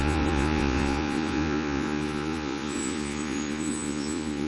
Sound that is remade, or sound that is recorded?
remade